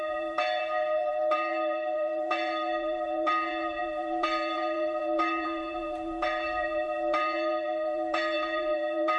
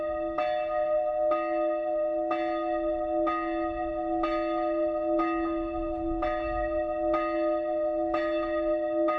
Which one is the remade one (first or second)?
first